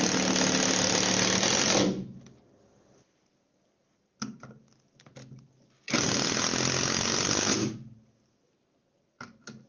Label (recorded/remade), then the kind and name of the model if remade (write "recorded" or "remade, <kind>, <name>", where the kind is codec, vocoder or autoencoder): recorded